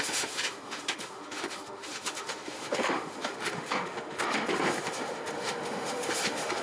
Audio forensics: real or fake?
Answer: fake